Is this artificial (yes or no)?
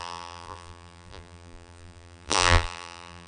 yes